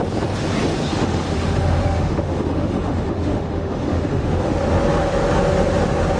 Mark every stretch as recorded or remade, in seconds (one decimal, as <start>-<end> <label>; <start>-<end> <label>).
0.0-0.9 recorded; 0.9-4.5 remade; 4.5-6.2 recorded